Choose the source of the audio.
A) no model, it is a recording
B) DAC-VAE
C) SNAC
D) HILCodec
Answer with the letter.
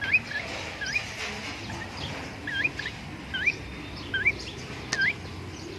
A